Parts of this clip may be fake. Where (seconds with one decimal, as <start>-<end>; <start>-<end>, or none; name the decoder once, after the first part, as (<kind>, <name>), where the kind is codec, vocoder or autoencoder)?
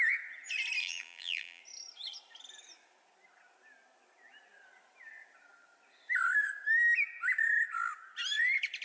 0.8-1.6 (vocoder, BigVGAN v2)